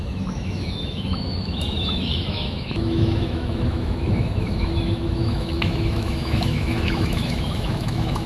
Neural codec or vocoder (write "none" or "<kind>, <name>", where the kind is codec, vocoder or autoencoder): autoencoder, DAC-VAE